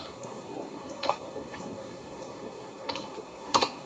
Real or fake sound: fake